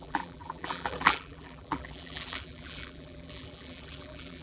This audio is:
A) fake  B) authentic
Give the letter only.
A